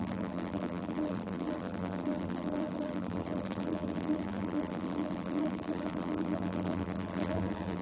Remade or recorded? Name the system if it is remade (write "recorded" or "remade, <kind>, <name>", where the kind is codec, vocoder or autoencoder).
remade, vocoder, BigVGAN v2